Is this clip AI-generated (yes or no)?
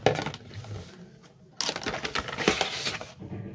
no